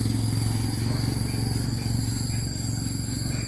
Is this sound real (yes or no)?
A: yes